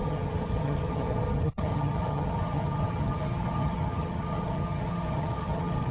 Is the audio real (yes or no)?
no